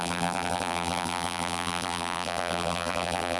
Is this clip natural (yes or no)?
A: no